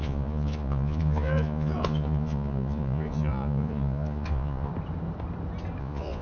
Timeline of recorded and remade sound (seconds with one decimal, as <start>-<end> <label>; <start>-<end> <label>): 0.0-4.7 remade; 4.7-5.8 recorded; 5.8-6.2 remade